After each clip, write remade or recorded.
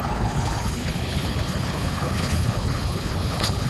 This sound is remade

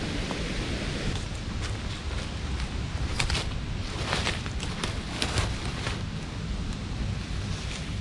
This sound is recorded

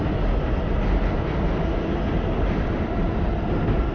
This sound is recorded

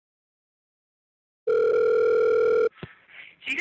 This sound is recorded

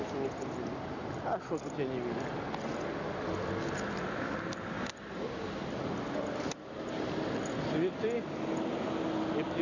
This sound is recorded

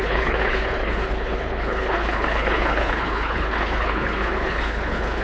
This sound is remade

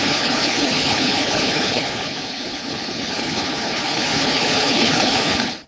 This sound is remade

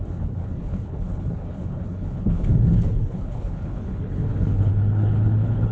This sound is remade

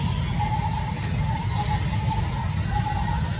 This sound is recorded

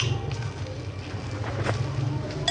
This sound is recorded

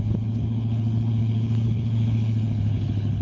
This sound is remade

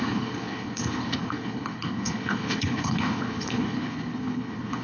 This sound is remade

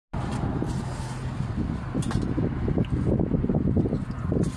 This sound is recorded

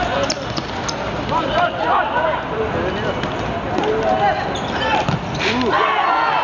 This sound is recorded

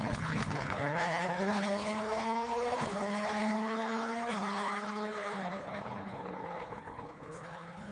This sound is remade